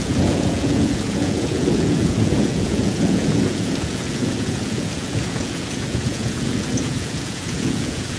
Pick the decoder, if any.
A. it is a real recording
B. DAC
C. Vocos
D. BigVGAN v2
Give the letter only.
C